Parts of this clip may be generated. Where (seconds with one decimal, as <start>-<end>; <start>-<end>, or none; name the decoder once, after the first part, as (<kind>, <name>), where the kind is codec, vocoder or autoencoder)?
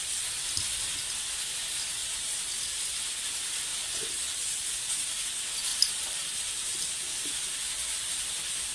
2.0-2.8 (vocoder, BigVGAN v2); 3.7-4.7; 5.7-6.8